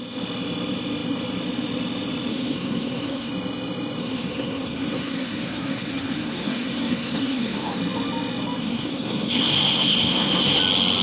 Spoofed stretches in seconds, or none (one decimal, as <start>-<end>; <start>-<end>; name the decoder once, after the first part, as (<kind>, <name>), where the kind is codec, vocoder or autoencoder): 2.3-3.3 (codec, SNAC); 4.0-7.8; 8.6-10.6